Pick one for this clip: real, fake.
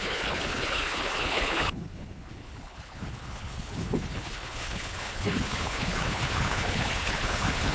fake